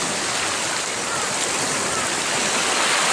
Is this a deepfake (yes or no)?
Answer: no